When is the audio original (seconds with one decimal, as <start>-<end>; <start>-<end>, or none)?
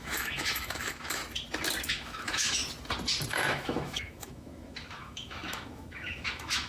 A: 1.2-1.9; 2.6-3.3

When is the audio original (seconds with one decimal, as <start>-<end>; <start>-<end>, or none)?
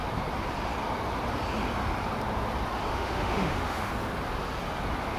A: 0.0-2.9; 3.9-5.2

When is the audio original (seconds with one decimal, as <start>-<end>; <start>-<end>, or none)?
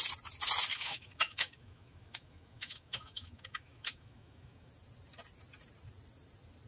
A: 0.0-0.7; 4.7-6.7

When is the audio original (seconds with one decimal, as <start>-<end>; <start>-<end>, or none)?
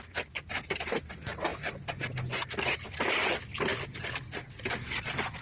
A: 0.0-5.4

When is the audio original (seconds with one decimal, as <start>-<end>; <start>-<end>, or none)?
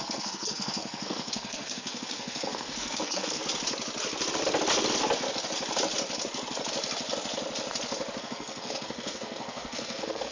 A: 3.4-8.2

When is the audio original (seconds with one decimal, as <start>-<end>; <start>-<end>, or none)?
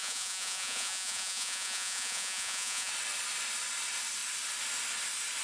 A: 2.9-5.4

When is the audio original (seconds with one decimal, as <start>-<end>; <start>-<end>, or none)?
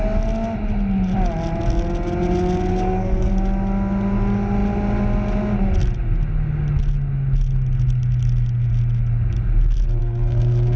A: 0.0-2.7; 3.3-10.0